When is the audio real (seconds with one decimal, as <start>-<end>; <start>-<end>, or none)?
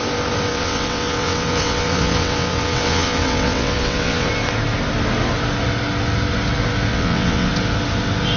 0.0-0.5; 4.3-6.9; 7.5-8.4